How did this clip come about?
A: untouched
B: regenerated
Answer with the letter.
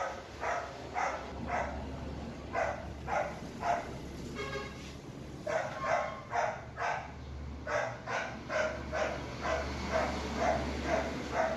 A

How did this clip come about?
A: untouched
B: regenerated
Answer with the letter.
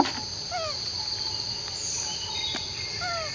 A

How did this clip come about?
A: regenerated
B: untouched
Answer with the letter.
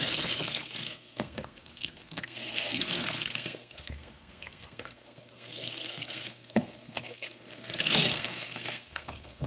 A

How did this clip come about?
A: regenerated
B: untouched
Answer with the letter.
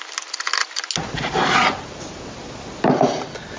B